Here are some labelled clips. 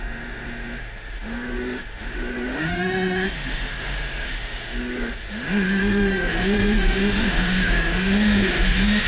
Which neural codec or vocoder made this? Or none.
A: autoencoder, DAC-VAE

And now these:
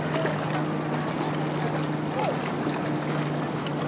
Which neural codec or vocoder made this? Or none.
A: none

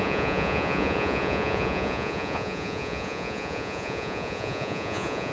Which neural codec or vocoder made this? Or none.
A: vocoder, Vocos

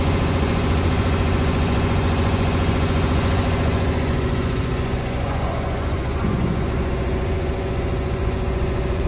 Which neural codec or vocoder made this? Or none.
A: vocoder, Vocos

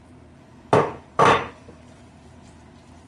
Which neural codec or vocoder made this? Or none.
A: vocoder, BigVGAN v2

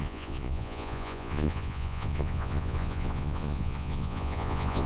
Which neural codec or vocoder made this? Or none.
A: vocoder, Vocos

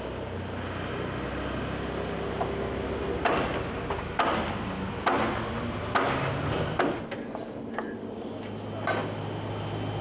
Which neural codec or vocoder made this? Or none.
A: none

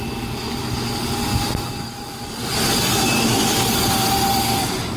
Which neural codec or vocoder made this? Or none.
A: none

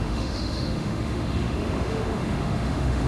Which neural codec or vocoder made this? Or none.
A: autoencoder, DAC-VAE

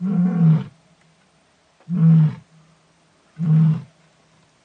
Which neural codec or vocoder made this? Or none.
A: none